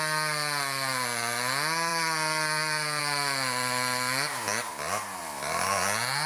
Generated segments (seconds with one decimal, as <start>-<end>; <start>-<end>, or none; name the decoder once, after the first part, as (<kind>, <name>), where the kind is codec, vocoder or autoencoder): 1.9-3.0 (vocoder, BigVGAN v2)